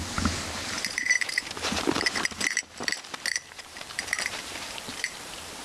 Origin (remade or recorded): remade